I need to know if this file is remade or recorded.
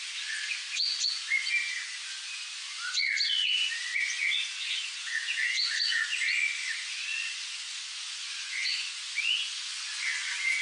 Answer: remade